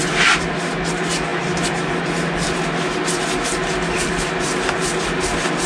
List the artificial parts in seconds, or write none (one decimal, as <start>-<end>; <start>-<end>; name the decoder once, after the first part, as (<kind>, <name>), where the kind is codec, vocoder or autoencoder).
none